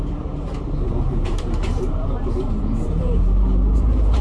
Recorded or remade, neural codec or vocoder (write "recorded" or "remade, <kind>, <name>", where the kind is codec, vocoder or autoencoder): remade, vocoder, BigVGAN v2